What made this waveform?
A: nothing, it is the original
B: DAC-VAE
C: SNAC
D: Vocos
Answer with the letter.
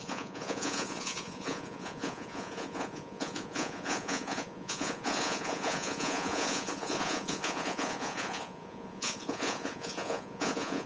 D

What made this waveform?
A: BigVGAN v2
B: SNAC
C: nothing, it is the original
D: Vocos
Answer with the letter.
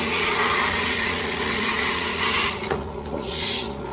D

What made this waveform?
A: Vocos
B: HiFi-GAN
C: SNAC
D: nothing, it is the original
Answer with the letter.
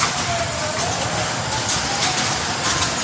D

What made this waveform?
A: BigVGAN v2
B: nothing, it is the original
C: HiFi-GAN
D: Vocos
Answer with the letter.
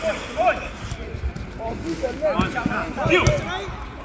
B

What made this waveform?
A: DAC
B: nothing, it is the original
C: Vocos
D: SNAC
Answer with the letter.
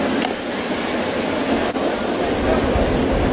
B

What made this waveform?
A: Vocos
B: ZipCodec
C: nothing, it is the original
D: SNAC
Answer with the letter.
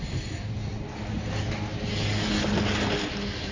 C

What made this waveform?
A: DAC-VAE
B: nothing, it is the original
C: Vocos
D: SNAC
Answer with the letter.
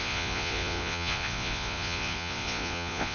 C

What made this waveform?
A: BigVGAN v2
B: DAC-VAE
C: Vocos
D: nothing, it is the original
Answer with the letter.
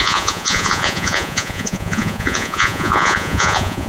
C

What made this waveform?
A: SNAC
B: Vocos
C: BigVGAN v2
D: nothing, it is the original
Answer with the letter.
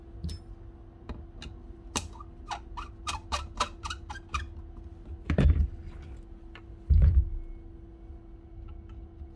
D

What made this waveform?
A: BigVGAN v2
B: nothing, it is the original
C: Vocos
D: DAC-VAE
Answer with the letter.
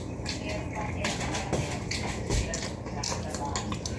B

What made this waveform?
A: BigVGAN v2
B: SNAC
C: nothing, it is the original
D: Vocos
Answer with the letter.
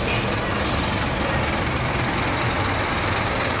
C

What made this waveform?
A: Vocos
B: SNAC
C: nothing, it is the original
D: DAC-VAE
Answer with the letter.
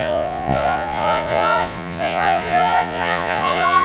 A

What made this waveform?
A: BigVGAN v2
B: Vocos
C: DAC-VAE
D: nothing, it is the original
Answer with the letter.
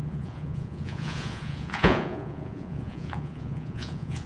B